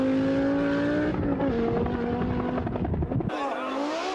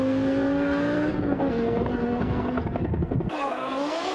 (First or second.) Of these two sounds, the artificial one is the second